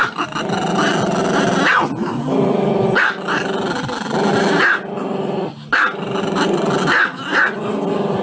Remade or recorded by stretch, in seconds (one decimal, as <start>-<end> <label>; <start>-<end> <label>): 0.0-8.2 recorded